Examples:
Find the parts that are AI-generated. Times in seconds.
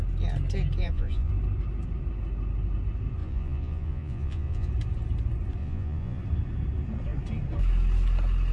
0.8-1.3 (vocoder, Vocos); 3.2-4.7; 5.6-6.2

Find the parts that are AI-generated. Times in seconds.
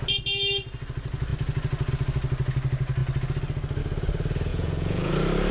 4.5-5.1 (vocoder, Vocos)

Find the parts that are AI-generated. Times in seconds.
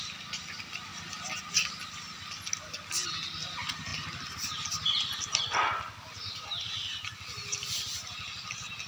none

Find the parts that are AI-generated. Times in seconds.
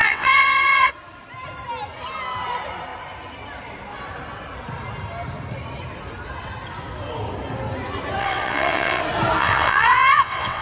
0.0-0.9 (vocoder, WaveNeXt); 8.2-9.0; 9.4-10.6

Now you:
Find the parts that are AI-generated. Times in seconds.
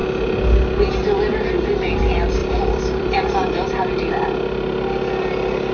2.4-4.1 (vocoder, BigVGAN v2)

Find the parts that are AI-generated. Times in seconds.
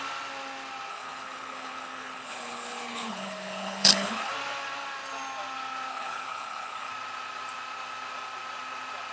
0.9-4.3 (codec, HILCodec); 5.9-6.9